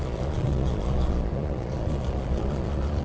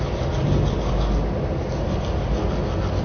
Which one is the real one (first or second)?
second